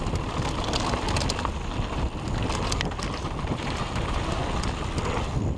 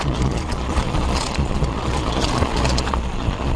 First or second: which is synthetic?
second